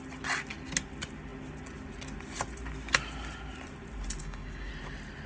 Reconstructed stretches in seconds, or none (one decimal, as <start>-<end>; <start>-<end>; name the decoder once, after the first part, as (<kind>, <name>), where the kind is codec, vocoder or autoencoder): 4.2-4.7 (codec, DAC)